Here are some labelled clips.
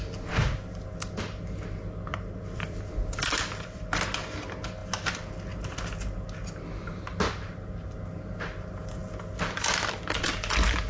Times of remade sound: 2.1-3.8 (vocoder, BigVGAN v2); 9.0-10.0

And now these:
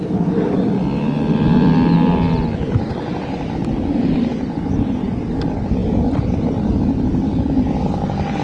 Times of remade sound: none

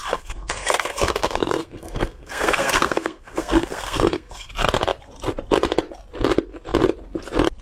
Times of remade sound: 0.0-4.5 (codec, SNAC)

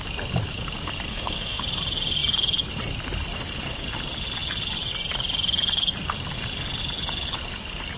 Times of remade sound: 1.1-1.6 (codec, SNAC)

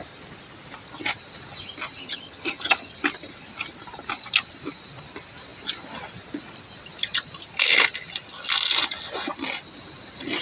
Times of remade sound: 2.0-2.9 (vocoder, HiFi-GAN)